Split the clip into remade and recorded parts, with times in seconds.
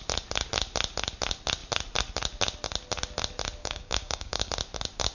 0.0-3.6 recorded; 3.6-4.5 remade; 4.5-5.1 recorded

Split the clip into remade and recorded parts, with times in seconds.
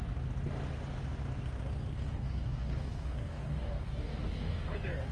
0.0-2.0 recorded; 2.0-5.1 remade